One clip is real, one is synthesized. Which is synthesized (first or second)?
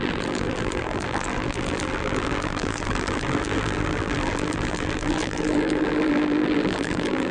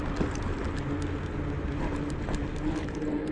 first